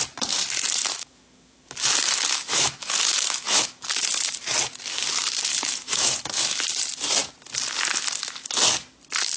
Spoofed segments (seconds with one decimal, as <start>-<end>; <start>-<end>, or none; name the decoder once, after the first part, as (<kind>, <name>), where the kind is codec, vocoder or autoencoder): 0.9-3.9 (autoencoder, DAC-VAE); 5.5-6.6